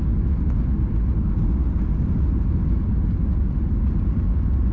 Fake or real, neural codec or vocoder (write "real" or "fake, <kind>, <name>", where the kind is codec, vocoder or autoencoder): real